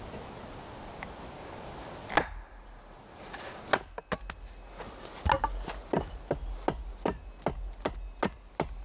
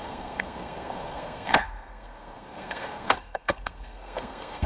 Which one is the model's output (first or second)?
second